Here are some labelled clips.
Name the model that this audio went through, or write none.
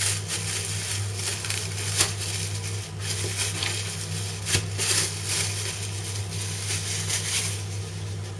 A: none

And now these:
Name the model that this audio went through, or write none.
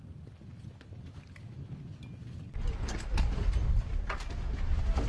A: none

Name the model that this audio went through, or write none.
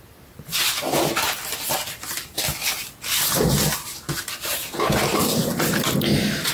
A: none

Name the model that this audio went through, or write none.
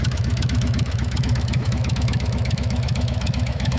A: autoencoder, DAC-VAE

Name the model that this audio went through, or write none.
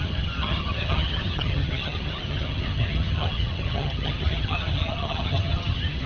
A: vocoder, HiFi-GAN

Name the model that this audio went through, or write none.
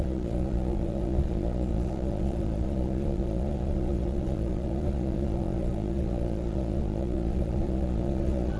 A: vocoder, Vocos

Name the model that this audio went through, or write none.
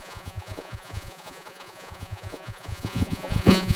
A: vocoder, Vocos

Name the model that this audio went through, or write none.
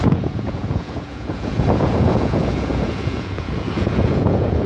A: vocoder, Vocos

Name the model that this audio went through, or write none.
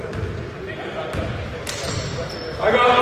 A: none